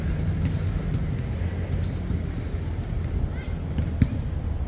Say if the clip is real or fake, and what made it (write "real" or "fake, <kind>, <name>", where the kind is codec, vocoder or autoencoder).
real